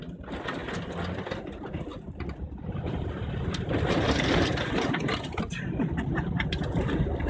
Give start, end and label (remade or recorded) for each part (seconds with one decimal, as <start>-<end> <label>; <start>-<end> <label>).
0.0-1.9 recorded; 1.9-5.4 remade; 5.4-7.3 recorded